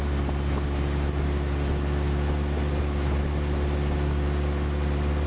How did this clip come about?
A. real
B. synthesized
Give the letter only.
A